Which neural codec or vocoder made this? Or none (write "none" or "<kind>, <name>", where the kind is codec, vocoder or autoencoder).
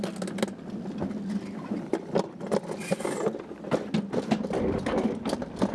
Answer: none